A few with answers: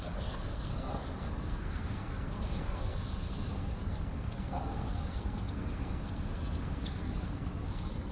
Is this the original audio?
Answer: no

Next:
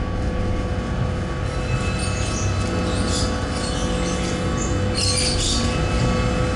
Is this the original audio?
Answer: yes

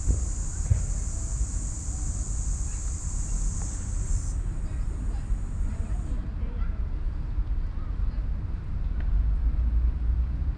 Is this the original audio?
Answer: yes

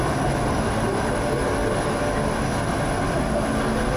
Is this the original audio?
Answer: yes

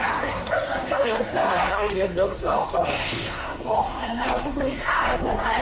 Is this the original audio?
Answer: no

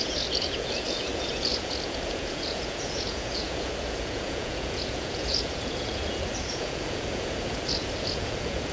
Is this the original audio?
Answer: no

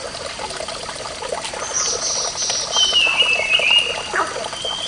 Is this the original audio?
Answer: yes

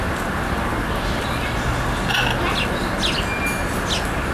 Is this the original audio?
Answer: yes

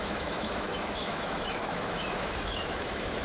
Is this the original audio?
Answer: no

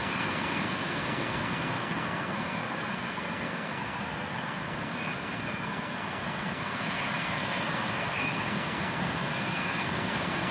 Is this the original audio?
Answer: no